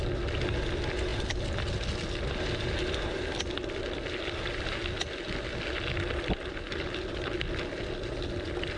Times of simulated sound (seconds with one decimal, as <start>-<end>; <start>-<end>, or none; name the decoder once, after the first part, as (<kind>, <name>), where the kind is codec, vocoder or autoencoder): none